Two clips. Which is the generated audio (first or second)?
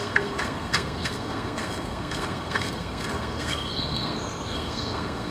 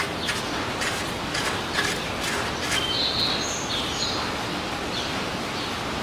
first